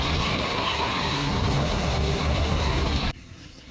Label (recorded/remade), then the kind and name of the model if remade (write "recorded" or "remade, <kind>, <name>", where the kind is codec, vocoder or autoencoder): remade, codec, SNAC